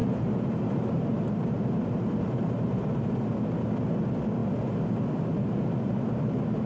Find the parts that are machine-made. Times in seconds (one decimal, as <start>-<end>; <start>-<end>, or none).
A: 0.0-3.0